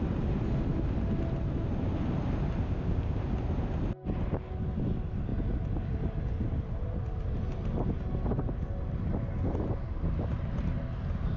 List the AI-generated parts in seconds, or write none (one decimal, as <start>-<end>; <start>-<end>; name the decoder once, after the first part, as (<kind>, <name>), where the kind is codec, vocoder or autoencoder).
2.6-3.2 (codec, ZipCodec)